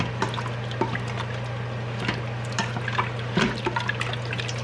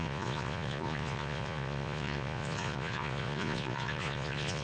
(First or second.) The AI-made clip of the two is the second